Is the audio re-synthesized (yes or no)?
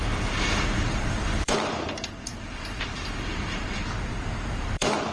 yes